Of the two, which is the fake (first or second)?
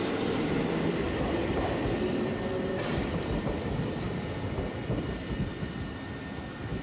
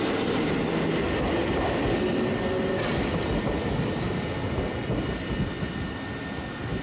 first